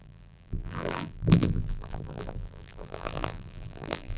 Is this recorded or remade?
remade